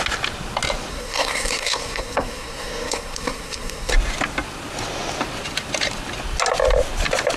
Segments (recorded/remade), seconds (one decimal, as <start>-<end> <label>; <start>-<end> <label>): 0.0-0.9 recorded; 0.9-3.9 remade; 3.9-7.4 recorded